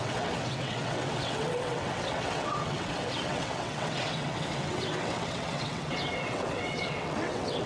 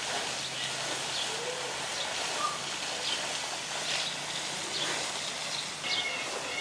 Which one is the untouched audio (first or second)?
second